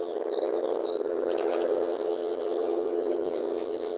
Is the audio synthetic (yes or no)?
yes